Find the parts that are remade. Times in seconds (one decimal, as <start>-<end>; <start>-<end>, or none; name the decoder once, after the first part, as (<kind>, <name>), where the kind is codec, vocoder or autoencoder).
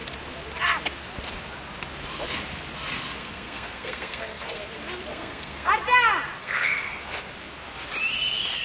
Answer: 3.2-4.6 (codec, SNAC); 5.1-5.7; 6.4-7.0